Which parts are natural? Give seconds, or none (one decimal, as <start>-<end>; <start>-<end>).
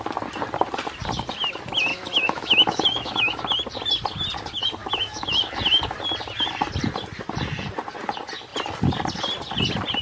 0.0-1.9; 3.4-4.8; 5.4-10.0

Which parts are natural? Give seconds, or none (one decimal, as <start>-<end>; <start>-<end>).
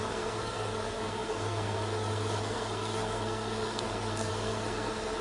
none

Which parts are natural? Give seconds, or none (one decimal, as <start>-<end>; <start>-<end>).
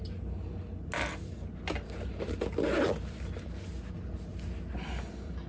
0.0-5.5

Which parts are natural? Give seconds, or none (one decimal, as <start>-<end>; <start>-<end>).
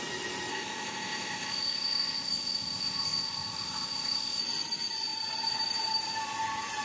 0.0-0.5; 4.4-6.8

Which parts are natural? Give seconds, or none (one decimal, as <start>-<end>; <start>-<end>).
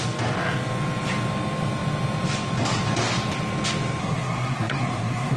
0.0-4.0